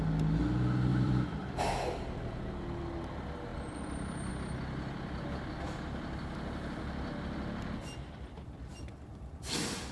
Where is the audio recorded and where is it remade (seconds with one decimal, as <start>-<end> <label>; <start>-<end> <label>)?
0.0-0.9 recorded; 0.9-2.4 remade; 2.4-9.9 recorded